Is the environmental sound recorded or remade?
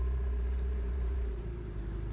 remade